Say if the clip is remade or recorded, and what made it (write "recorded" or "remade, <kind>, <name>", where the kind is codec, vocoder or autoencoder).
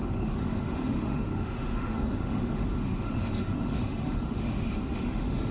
remade, autoencoder, DAC-VAE